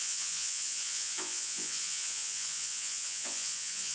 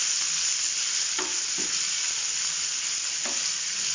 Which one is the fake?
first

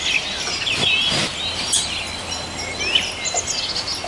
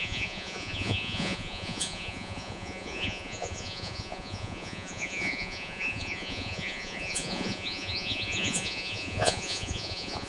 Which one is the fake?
second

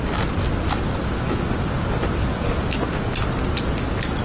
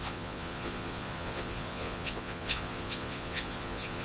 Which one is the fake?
second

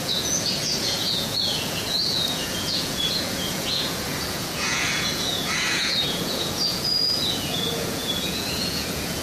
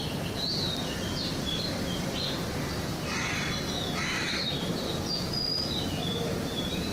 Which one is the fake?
first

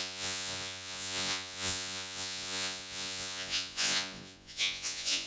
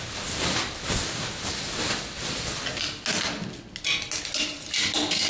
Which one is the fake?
first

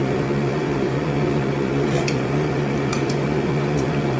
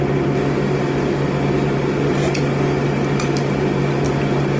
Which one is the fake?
first